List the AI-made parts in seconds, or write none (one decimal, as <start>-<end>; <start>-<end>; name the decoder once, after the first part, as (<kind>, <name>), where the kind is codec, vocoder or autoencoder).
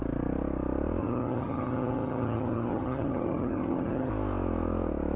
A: 1.0-4.1 (vocoder, HiFi-GAN)